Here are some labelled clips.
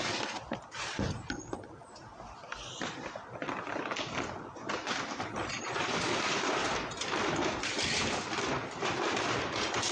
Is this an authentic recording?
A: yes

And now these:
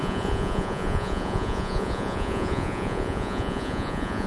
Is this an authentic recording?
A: no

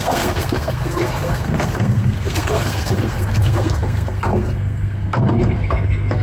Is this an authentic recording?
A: no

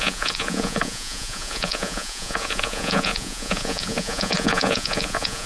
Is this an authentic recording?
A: no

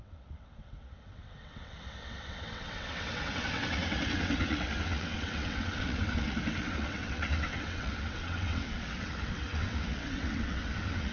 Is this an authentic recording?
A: no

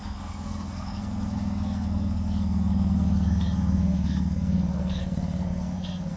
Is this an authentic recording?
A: no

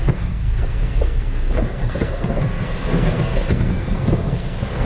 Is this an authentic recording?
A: no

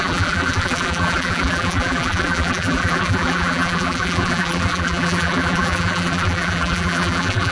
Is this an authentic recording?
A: no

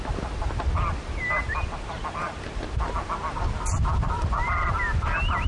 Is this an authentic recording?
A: yes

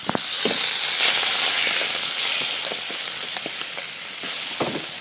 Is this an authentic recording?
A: yes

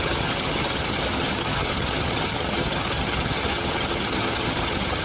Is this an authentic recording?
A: no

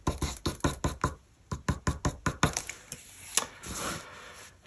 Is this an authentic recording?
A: yes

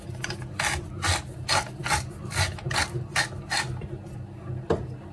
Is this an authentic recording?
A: yes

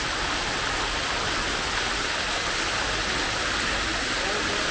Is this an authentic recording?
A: yes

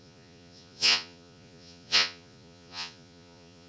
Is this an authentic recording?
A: no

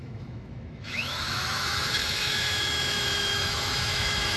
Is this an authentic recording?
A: no